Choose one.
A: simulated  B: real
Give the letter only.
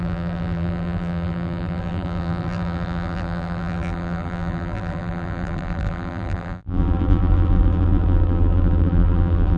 A